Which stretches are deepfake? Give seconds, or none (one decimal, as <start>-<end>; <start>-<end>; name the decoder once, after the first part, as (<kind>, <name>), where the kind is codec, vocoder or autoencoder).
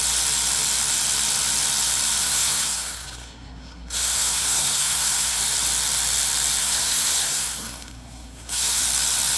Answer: 2.2-5.4 (codec, SNAC); 6.6-8.8